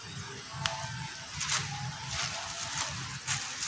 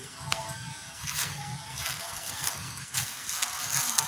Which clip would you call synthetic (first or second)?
second